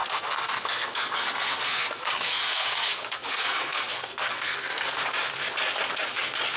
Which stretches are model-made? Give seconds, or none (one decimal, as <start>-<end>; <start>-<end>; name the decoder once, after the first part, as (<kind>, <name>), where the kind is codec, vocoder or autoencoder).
0.0-4.9 (codec, SNAC)